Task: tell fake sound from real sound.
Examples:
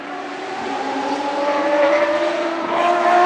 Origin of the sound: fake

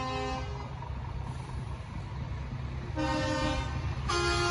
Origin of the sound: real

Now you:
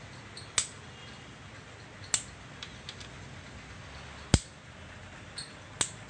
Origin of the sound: real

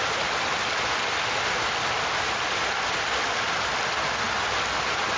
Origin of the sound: real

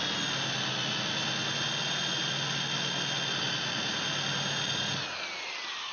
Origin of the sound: real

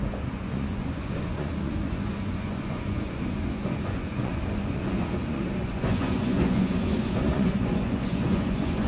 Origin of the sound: fake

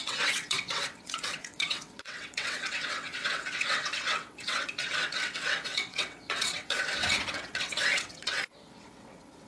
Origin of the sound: fake